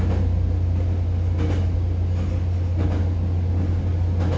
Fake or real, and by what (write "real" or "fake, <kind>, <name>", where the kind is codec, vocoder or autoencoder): real